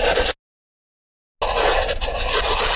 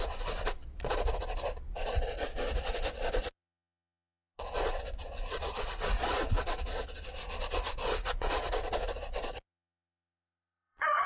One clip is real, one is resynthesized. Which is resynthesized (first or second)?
second